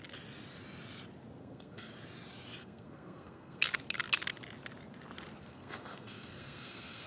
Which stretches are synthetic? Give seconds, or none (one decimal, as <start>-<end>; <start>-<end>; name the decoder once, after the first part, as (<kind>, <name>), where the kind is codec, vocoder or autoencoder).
1.4-1.9 (codec, SNAC); 2.6-3.6; 5.4-7.1